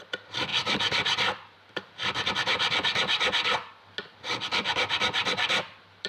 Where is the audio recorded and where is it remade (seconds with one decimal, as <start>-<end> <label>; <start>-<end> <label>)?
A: 0.0-0.5 recorded; 0.5-2.3 remade; 2.3-5.2 recorded; 5.2-6.1 remade